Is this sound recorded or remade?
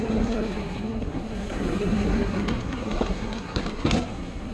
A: remade